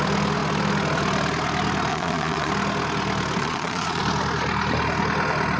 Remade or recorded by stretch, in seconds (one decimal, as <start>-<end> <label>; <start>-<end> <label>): 0.0-1.9 recorded; 1.9-2.5 remade; 2.5-3.4 recorded; 3.4-4.0 remade; 4.0-5.6 recorded